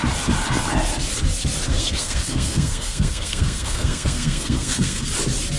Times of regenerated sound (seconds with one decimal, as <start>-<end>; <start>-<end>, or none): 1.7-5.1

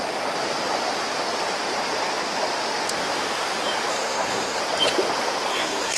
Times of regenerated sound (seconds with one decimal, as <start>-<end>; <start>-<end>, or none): 3.9-4.6; 5.5-6.0

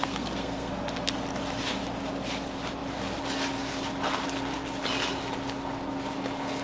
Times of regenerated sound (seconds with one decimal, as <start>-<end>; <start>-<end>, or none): 0.0-0.7

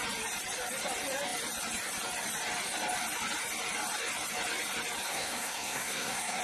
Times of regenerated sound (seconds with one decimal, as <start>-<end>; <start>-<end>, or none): 5.1-6.4

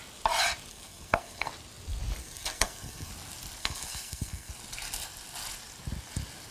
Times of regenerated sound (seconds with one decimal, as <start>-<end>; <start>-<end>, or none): 0.7-1.5; 2.2-3.1; 3.6-4.5